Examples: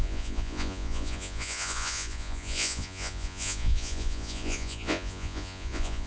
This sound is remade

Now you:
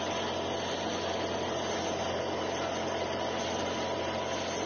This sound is recorded